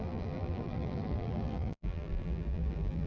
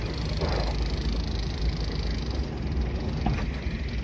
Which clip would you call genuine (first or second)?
second